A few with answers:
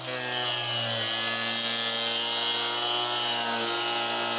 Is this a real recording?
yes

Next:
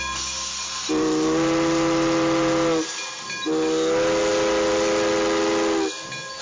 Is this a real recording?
yes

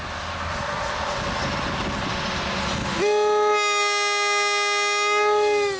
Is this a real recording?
yes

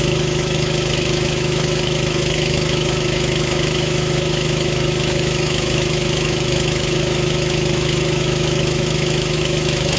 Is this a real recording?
no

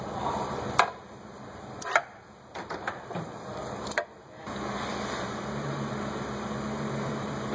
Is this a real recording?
no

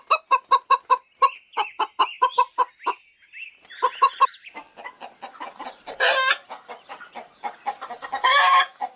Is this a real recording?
yes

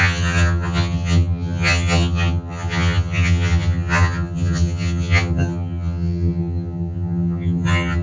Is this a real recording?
no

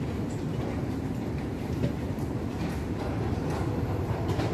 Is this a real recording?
no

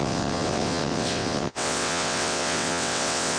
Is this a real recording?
no